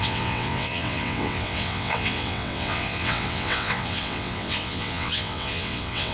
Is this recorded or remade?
remade